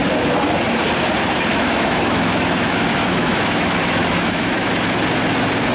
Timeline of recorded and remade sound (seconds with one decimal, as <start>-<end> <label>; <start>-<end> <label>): 0.0-1.5 recorded; 1.5-4.7 remade; 4.7-5.7 recorded

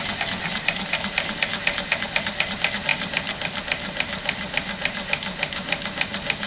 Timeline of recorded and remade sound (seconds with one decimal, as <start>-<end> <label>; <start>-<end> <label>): 0.0-6.5 recorded

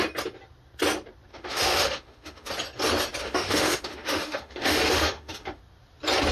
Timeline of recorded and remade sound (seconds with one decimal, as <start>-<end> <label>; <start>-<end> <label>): 0.0-1.3 recorded; 1.3-2.5 remade; 2.5-3.2 recorded; 3.2-5.6 remade; 5.6-6.3 recorded

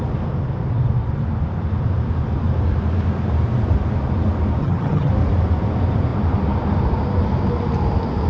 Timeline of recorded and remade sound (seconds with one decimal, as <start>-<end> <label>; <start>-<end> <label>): 0.0-4.6 recorded; 4.6-5.1 remade; 5.1-8.3 recorded

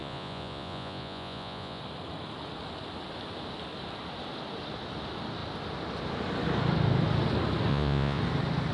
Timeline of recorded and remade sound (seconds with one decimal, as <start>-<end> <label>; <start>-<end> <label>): 0.0-1.8 remade; 1.8-7.7 recorded; 7.7-8.2 remade; 8.2-8.7 recorded